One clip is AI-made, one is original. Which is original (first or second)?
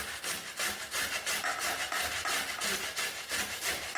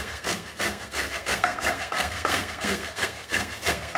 first